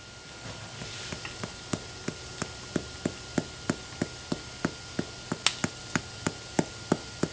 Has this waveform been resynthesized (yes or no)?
no